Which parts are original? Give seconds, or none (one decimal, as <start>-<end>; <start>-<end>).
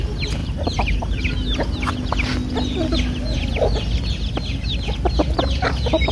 0.0-0.4; 1.2-6.1